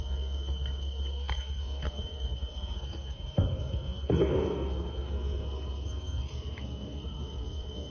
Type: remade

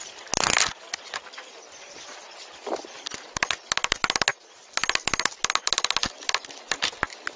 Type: recorded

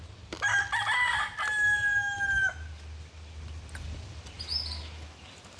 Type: recorded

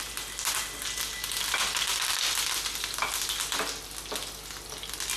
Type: recorded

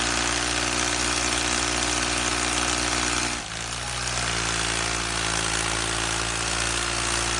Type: recorded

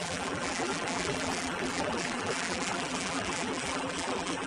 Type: remade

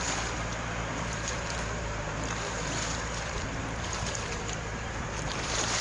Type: remade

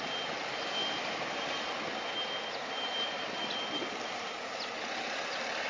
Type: recorded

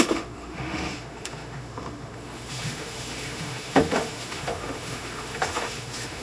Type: remade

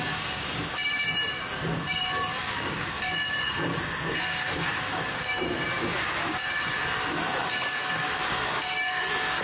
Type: remade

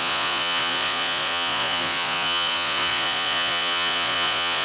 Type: remade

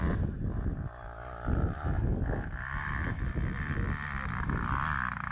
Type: recorded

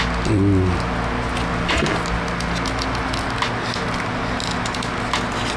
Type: recorded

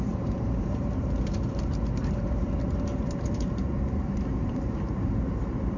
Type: remade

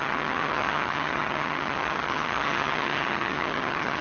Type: remade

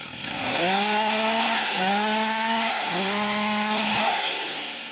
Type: remade